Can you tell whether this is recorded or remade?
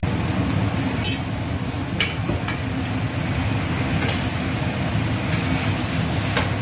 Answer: recorded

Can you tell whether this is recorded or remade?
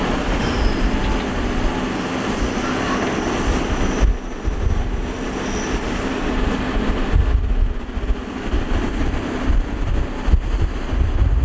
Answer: recorded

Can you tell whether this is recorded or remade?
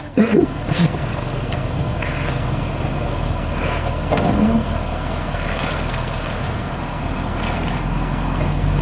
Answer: remade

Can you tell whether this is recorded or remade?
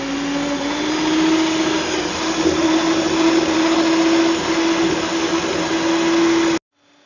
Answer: recorded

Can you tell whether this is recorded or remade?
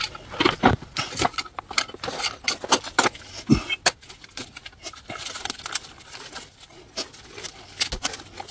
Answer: recorded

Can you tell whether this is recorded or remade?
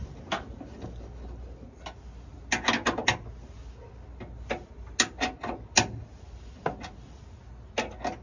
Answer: recorded